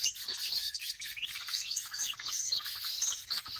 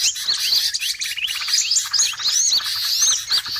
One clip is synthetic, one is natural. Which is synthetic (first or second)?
first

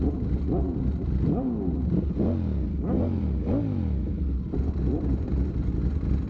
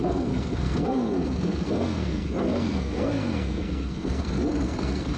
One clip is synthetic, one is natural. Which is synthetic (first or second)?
second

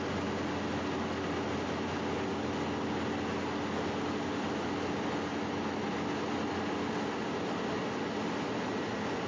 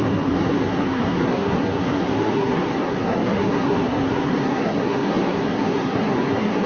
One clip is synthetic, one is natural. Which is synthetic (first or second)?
second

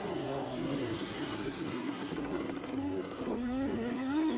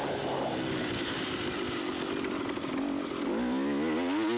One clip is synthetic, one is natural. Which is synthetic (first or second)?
first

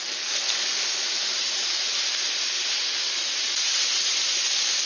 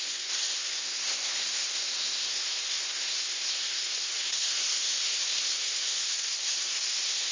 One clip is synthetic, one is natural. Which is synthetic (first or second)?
second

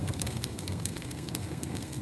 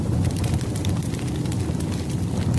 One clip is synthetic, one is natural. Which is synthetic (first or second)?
first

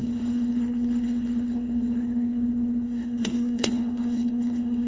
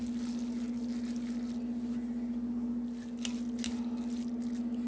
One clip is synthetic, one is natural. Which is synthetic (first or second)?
first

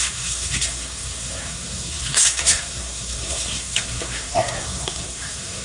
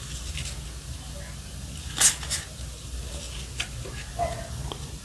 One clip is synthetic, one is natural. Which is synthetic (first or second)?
first